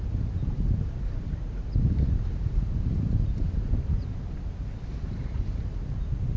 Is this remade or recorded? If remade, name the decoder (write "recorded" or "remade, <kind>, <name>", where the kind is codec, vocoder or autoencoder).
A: recorded